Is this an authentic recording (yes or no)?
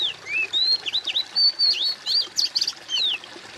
yes